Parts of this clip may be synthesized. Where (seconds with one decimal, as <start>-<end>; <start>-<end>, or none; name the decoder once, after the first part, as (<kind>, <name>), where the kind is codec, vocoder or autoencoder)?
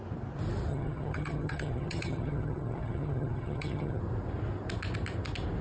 0.7-4.0 (vocoder, HiFi-GAN)